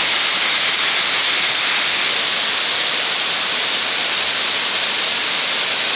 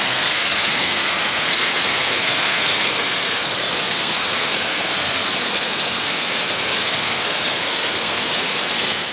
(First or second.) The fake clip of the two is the second